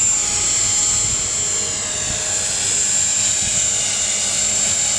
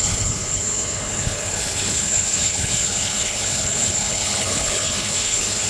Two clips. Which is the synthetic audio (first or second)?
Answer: second